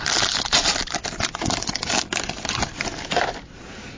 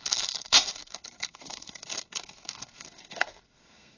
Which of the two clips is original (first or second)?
first